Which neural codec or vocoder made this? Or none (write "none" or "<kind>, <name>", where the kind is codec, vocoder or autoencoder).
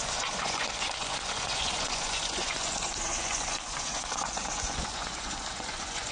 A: vocoder, Vocos